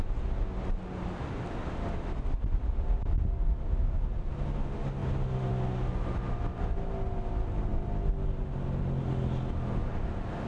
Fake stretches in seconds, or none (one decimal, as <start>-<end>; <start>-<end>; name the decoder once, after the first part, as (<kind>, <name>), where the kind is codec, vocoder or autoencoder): none